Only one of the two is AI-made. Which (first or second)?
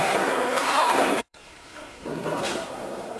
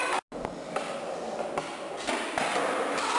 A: first